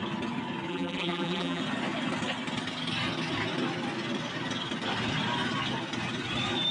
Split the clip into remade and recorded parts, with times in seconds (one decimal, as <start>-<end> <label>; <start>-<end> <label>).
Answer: 0.0-0.7 recorded; 0.7-1.6 remade; 1.6-6.7 recorded